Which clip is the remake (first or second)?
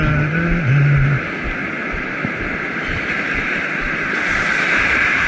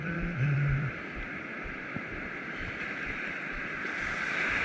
second